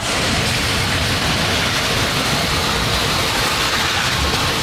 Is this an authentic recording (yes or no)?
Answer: yes